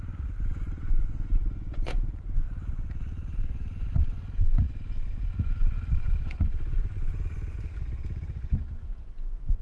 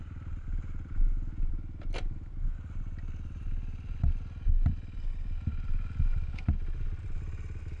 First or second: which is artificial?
first